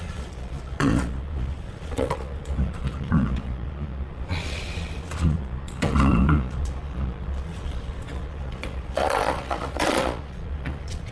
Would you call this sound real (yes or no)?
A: no